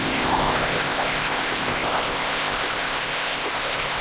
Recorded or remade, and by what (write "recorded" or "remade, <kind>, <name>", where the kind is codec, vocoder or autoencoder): remade, codec, ZipCodec